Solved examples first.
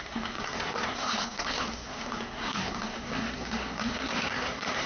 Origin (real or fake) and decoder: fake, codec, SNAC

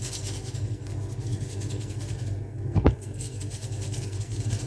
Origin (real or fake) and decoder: fake, codec, SNAC